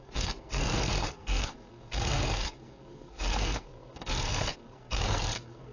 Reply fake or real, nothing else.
fake